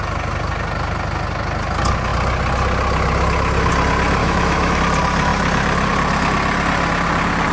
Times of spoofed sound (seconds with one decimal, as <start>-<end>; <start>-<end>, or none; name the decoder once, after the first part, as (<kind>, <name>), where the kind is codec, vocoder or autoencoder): 4.2-4.8 (autoencoder, DAC-VAE)

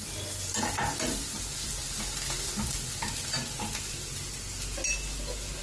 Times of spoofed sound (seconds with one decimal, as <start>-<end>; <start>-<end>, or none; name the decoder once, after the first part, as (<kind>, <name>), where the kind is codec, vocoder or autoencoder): none

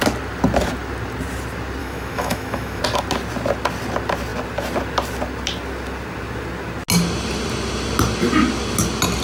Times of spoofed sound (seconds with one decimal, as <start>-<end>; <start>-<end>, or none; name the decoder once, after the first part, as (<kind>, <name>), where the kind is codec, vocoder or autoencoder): 1.8-2.8 (autoencoder, DAC-VAE)

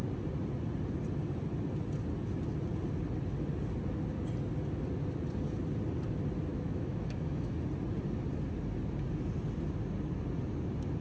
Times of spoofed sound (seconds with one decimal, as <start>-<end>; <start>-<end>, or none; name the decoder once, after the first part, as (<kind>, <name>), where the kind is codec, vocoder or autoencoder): 6.5-7.5 (autoencoder, DAC-VAE)

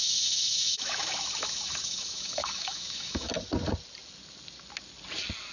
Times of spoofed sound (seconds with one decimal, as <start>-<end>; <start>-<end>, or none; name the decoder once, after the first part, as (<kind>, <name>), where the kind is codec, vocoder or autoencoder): 0.0-3.3 (autoencoder, DAC-VAE)